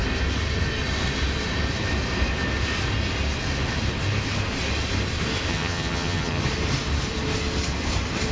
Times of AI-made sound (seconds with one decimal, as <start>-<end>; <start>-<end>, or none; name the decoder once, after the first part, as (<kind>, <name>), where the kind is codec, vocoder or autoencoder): 5.5-6.4 (vocoder, HiFi-GAN)